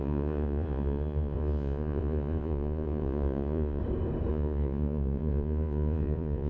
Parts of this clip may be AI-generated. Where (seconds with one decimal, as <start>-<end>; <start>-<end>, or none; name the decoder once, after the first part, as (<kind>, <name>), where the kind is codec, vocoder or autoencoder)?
0.0-3.8 (vocoder, Vocos); 4.3-6.5